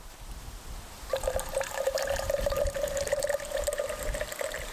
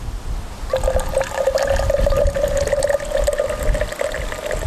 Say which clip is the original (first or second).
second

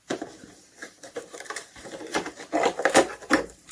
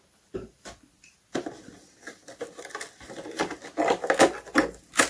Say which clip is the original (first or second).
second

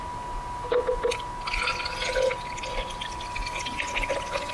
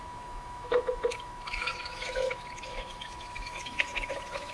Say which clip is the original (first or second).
first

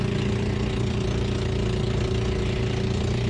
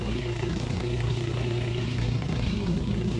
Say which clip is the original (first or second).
first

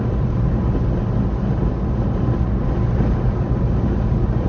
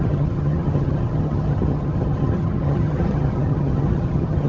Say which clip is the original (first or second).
first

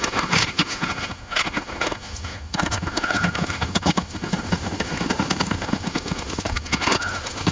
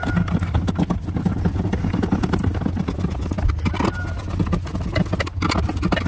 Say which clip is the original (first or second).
second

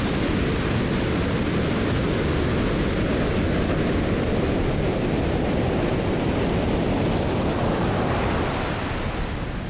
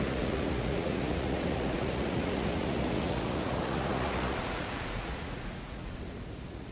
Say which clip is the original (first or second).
first